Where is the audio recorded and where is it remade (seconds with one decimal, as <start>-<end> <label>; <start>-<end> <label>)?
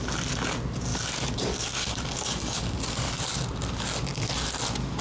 0.0-0.9 recorded; 0.9-3.2 remade; 3.2-5.0 recorded